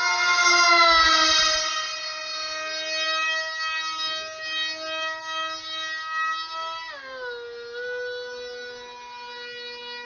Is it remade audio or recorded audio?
recorded